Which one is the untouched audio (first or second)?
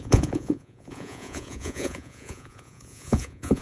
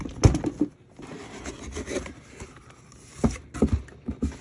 second